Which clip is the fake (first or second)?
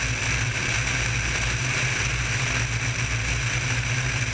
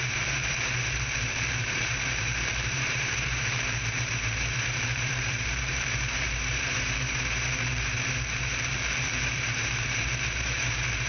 second